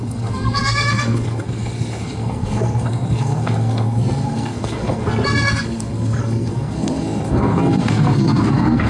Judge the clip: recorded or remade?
remade